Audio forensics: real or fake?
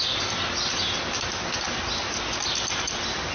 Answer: real